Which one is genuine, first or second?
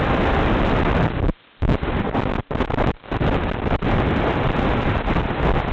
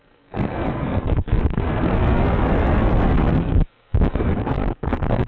first